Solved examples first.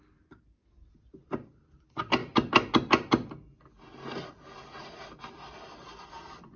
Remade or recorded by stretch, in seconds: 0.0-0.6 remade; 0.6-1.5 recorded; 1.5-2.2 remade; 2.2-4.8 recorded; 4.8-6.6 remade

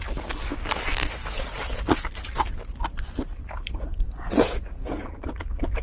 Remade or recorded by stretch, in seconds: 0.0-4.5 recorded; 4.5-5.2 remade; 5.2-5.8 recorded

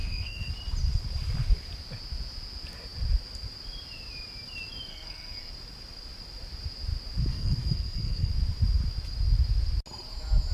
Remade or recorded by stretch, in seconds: 0.0-0.5 remade; 0.5-4.9 recorded; 4.9-5.5 remade; 5.5-7.3 recorded; 7.3-8.3 remade; 8.3-10.5 recorded